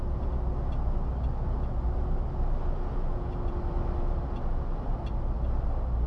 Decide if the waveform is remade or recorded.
recorded